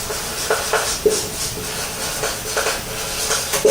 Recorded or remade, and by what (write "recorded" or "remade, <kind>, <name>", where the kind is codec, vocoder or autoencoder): recorded